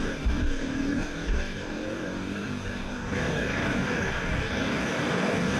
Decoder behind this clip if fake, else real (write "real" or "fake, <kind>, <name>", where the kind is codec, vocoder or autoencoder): fake, codec, DAC